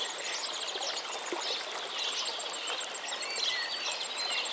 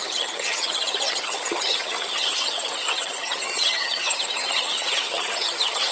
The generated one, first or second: second